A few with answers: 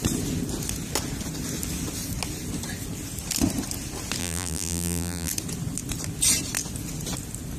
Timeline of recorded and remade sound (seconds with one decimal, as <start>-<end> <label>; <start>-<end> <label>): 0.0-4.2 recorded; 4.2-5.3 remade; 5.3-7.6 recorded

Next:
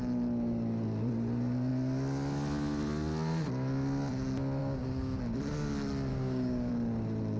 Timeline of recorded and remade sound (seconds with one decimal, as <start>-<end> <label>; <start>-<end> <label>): 0.0-4.6 recorded; 4.6-5.2 remade; 5.2-6.1 recorded; 6.1-6.7 remade; 6.7-7.4 recorded

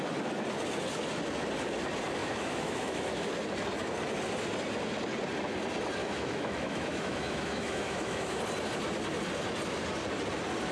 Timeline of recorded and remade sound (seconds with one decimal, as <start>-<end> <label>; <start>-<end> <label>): 0.0-2.2 recorded; 2.2-3.3 remade; 3.3-6.0 recorded; 6.0-8.4 remade; 8.4-10.7 recorded

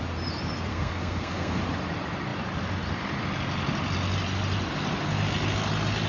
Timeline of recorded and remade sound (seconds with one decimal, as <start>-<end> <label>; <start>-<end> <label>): 0.0-0.7 recorded; 0.7-1.6 remade; 1.6-6.1 recorded